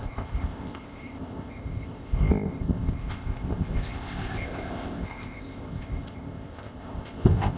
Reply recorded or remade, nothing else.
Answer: remade